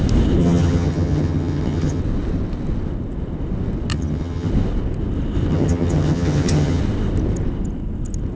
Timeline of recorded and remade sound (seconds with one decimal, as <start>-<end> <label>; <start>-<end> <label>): 0.0-0.4 recorded; 0.4-2.0 remade; 2.0-3.9 recorded; 3.9-4.5 remade; 4.5-5.5 recorded; 5.5-6.8 remade; 6.8-8.3 recorded